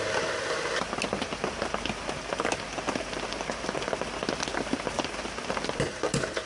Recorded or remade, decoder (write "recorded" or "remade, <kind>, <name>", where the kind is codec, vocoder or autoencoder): recorded